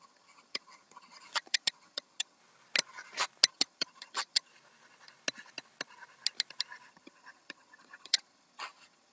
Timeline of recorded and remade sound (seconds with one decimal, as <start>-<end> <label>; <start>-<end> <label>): 0.0-2.4 remade; 2.4-3.5 recorded; 3.5-4.5 remade; 4.5-6.9 recorded; 6.9-9.1 remade